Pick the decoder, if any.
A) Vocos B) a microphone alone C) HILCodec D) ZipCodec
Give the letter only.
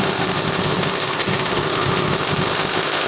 D